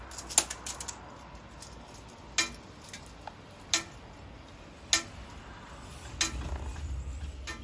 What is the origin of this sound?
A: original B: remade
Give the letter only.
A